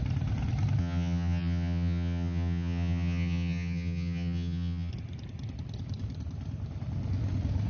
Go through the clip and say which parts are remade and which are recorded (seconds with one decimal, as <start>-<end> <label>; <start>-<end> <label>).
0.0-0.8 recorded; 0.8-4.9 remade; 4.9-7.7 recorded